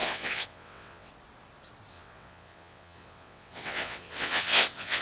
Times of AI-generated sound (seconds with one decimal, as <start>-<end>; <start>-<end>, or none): 0.0-1.1; 1.9-5.0